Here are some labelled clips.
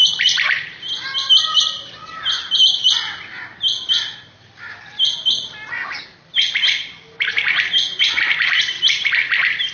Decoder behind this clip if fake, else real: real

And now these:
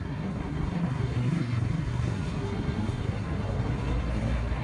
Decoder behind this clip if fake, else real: fake, codec, SNAC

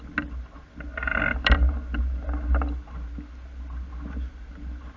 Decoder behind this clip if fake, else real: real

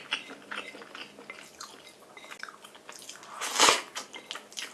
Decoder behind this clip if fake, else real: real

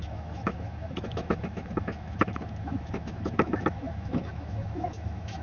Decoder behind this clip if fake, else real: fake, autoencoder, DAC-VAE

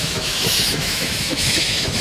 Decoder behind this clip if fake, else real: fake, autoencoder, DAC-VAE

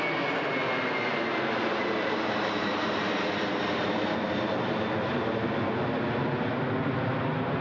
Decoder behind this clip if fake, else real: real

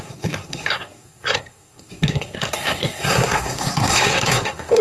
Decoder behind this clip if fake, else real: fake, codec, SNAC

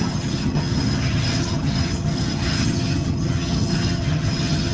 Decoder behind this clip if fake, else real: fake, vocoder, HiFi-GAN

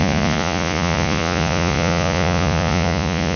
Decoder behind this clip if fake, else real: fake, vocoder, Vocos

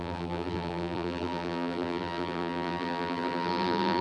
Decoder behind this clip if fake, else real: fake, vocoder, BigVGAN v2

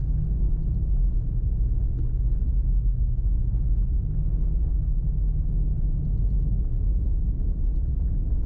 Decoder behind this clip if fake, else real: real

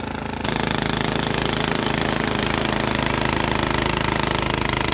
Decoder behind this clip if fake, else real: real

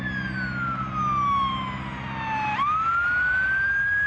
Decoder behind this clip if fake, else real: real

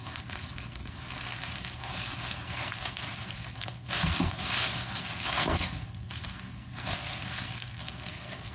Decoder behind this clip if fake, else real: fake, codec, SNAC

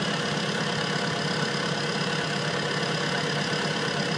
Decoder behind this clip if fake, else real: real